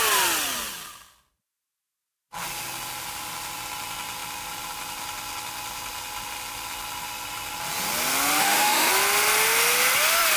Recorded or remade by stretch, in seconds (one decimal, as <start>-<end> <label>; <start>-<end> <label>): 0.0-8.4 recorded; 8.4-8.9 remade; 8.9-10.4 recorded